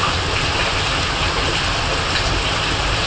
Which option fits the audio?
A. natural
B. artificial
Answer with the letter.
A